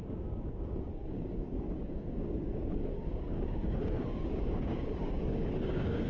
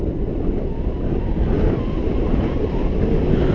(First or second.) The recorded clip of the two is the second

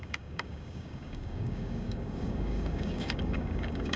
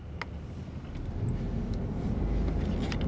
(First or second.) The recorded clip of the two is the second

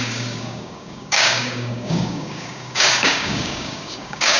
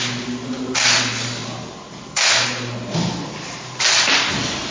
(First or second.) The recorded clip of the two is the second